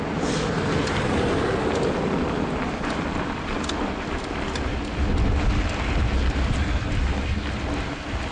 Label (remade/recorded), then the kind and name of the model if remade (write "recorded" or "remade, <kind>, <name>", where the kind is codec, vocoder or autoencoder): recorded